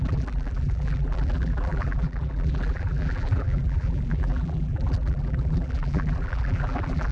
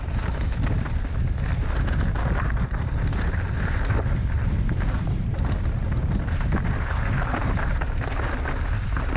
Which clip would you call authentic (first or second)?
second